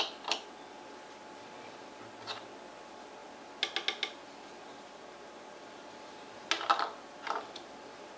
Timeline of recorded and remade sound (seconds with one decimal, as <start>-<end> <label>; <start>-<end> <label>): 0.0-8.2 recorded